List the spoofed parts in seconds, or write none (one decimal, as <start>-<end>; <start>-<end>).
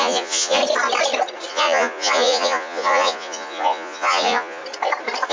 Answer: 0.0-0.6; 1.5-4.6